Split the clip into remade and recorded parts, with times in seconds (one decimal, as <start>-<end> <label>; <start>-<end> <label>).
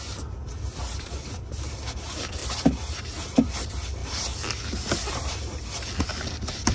0.0-2.4 recorded; 2.4-3.0 remade; 3.0-6.7 recorded